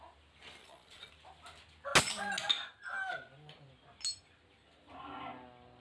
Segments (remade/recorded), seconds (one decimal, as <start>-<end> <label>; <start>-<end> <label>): 0.0-0.6 recorded; 0.6-1.1 remade; 1.1-5.8 recorded